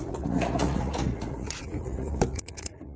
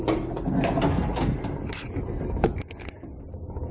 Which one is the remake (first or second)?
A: first